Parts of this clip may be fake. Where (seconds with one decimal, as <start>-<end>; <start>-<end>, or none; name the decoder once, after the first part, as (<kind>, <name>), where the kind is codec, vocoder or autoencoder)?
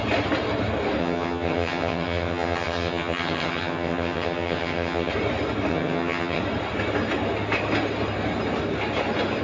1.0-5.1 (vocoder, HiFi-GAN); 5.7-6.4